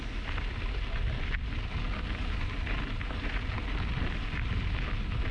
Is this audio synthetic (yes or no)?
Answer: no